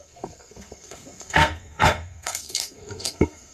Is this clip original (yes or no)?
no